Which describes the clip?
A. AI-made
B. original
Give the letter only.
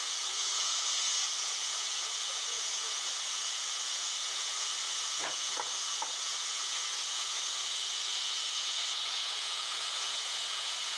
A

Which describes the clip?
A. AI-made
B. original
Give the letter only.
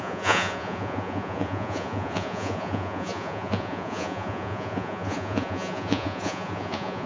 A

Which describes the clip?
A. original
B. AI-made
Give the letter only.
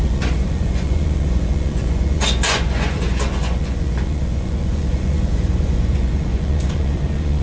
B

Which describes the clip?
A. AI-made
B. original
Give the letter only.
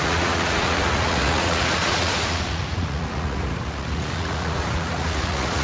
A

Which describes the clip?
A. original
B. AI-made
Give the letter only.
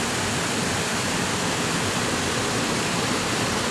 A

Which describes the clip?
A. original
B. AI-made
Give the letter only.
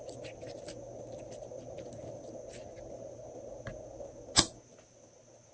A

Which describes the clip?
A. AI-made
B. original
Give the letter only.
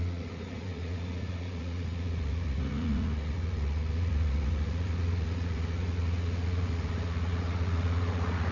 A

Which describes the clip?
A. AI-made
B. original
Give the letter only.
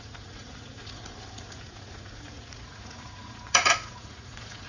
A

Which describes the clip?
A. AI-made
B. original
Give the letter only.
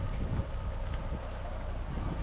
B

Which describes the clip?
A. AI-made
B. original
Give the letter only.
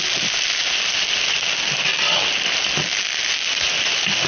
B